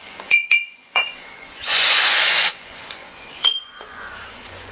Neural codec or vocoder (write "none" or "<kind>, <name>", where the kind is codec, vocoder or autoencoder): vocoder, Vocos